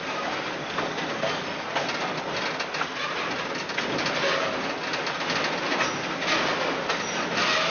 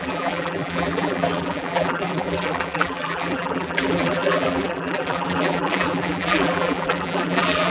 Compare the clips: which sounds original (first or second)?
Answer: first